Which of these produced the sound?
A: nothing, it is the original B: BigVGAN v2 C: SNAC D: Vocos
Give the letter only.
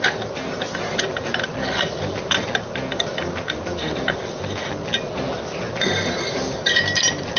A